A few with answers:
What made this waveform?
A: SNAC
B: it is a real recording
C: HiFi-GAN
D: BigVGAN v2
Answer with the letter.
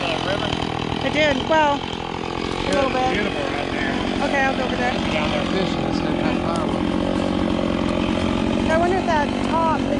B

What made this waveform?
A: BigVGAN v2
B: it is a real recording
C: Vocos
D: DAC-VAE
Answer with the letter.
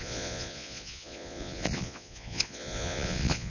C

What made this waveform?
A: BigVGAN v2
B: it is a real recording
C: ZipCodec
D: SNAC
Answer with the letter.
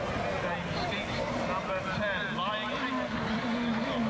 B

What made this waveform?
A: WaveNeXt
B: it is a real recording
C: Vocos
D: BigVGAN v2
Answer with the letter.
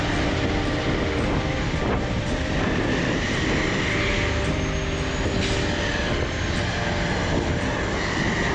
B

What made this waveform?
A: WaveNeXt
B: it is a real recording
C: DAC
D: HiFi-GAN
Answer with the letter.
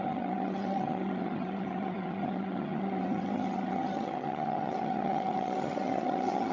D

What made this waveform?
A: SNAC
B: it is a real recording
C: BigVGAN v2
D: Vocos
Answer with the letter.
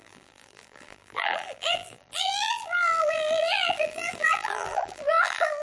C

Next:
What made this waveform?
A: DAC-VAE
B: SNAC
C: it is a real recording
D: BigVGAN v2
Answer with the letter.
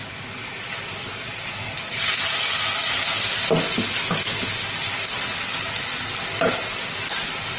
C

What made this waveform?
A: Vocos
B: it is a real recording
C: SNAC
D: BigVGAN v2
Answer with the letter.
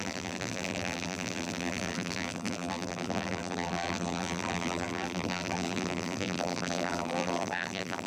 D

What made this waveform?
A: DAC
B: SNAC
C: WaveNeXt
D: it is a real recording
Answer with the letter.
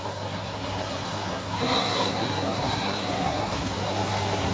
B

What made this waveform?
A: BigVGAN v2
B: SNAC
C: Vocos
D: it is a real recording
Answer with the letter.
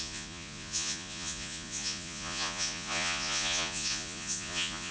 C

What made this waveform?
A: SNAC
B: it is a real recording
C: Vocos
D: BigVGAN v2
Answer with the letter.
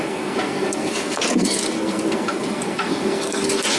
A